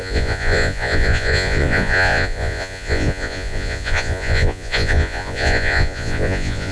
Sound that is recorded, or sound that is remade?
remade